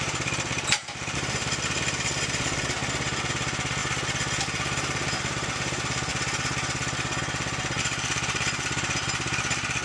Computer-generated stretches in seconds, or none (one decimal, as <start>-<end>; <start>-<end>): 0.0-2.8; 3.3-3.8; 4.4-6.1; 7.2-9.8